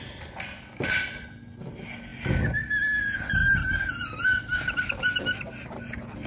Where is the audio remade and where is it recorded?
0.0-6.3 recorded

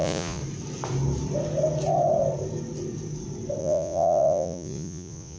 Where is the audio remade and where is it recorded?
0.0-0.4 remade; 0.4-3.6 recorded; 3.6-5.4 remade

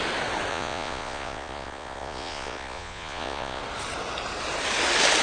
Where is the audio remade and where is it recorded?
0.0-0.5 recorded; 0.5-3.6 remade; 3.6-5.2 recorded

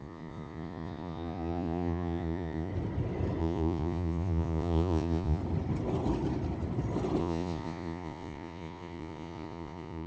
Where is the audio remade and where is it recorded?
0.0-2.7 remade; 2.7-3.4 recorded; 3.4-5.4 remade; 5.4-7.2 recorded; 7.2-10.1 remade

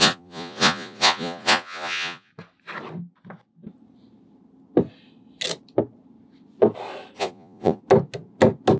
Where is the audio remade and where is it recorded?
0.0-2.3 remade; 2.3-7.2 recorded; 7.2-7.8 remade; 7.8-8.8 recorded